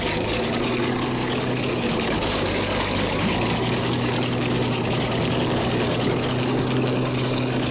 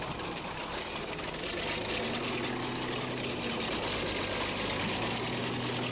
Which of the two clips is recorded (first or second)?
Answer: second